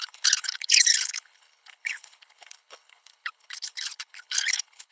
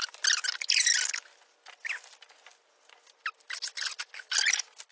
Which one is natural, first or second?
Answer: second